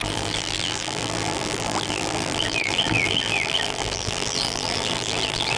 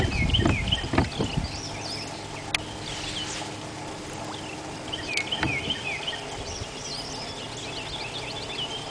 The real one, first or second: second